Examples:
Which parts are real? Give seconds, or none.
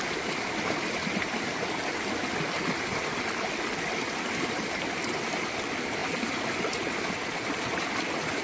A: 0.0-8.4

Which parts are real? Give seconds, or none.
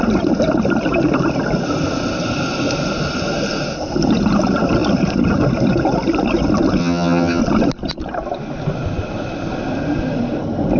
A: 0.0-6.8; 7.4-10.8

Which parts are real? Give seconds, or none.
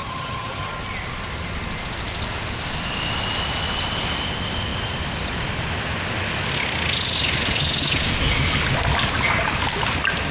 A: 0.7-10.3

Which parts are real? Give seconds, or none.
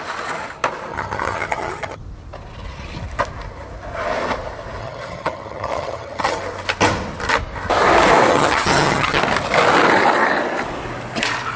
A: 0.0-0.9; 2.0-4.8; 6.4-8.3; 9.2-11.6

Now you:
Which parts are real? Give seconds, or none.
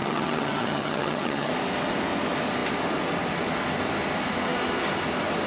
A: 1.5-5.5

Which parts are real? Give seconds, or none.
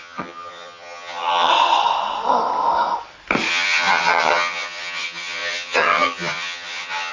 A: 1.5-3.5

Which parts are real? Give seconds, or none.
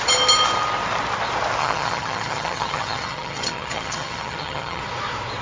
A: 0.0-1.6; 4.8-5.4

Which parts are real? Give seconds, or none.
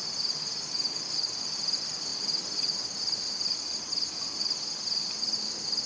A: 0.0-5.9